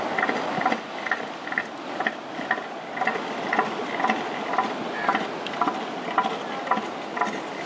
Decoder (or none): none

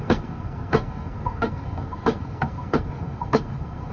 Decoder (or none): codec, SNAC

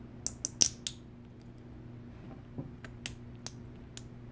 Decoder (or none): none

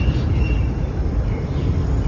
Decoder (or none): none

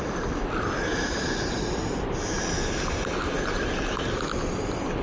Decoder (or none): none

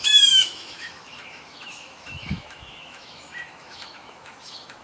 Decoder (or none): autoencoder, DAC-VAE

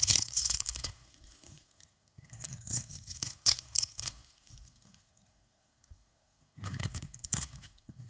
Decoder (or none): codec, SNAC